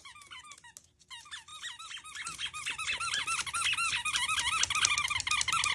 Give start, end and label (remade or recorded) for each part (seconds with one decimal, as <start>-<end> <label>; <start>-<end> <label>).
0.0-5.7 recorded